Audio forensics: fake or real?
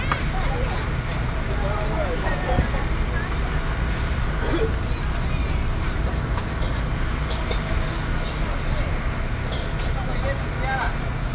real